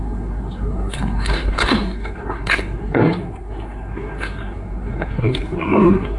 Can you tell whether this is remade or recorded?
remade